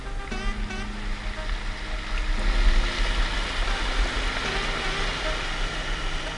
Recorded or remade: recorded